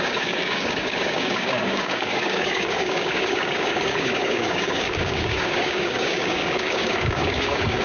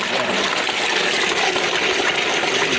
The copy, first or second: first